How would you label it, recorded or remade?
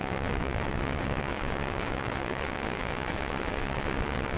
remade